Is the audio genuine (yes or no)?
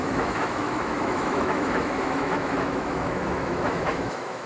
no